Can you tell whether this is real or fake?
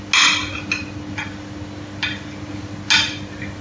real